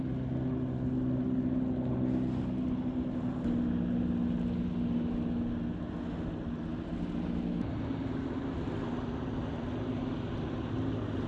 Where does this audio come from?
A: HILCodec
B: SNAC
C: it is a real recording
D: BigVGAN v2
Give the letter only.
C